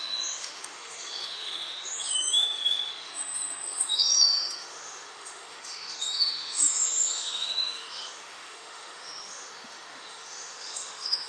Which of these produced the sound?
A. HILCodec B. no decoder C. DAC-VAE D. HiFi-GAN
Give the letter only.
C